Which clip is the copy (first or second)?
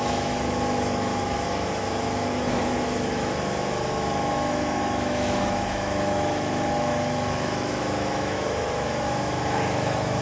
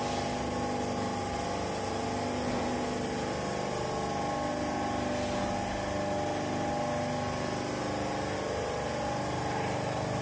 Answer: first